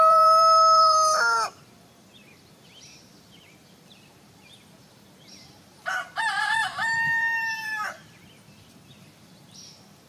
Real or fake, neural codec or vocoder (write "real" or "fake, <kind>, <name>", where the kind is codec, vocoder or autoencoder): fake, vocoder, BigVGAN v2